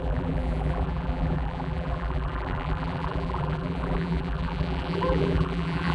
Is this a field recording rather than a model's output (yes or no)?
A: no